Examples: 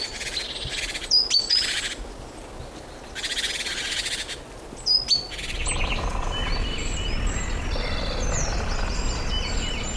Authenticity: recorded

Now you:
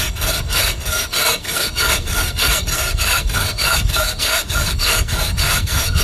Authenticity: remade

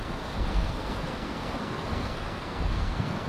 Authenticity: remade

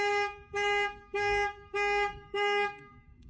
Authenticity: remade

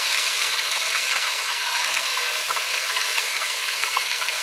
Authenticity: remade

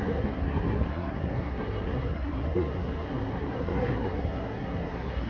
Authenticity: remade